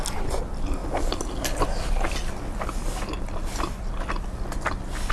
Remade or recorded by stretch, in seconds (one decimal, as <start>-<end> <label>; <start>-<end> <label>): 0.0-5.1 recorded